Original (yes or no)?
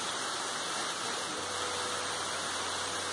yes